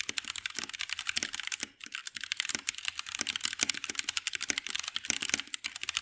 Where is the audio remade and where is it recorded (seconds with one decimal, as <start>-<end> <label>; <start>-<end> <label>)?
0.0-6.0 recorded